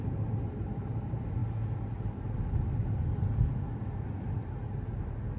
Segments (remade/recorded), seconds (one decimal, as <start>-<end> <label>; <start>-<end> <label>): 0.0-5.4 recorded